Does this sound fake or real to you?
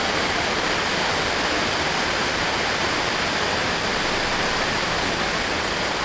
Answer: real